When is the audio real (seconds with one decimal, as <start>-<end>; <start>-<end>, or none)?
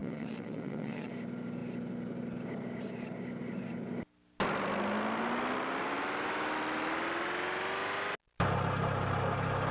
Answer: 1.1-9.7